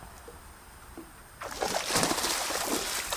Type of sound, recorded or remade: recorded